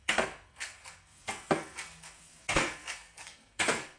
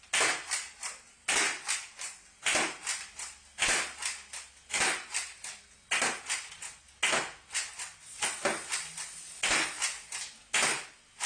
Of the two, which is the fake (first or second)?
first